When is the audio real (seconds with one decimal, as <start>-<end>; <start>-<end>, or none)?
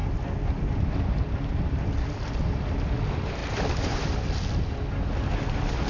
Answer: 0.0-5.9